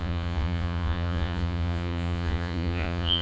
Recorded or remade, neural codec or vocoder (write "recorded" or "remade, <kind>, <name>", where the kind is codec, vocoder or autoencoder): remade, vocoder, Vocos